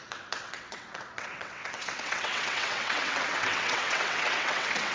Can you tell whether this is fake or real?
fake